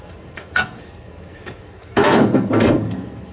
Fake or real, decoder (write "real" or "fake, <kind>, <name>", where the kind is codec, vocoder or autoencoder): fake, codec, SNAC